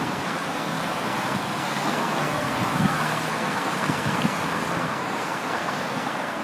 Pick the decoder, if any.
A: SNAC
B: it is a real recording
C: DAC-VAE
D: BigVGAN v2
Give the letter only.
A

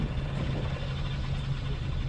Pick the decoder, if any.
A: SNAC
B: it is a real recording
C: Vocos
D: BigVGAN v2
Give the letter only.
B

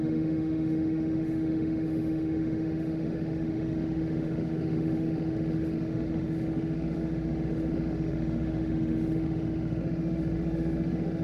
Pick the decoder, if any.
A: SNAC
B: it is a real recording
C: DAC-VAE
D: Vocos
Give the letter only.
C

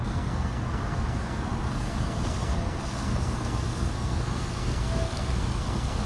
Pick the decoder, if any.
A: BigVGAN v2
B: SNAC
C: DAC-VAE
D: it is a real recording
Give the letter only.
B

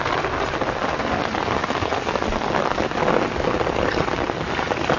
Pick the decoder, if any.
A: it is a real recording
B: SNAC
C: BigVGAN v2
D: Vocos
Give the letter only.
A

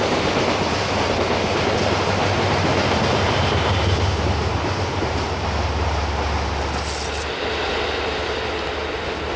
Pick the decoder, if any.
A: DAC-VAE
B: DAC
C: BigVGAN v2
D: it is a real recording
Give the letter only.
D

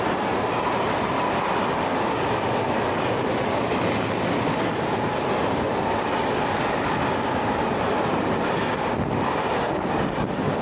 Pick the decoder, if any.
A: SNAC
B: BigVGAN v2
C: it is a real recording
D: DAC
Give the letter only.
C